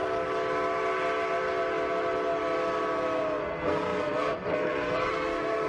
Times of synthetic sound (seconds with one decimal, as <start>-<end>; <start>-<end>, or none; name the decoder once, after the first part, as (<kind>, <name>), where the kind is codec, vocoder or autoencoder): 3.4-5.7 (codec, SNAC)